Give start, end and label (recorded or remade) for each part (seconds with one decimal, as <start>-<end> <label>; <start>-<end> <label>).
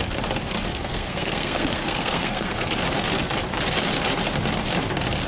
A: 0.0-0.7 recorded; 0.7-2.7 remade; 2.7-5.3 recorded